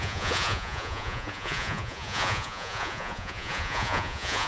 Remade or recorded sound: remade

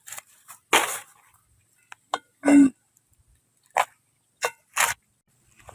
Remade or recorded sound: recorded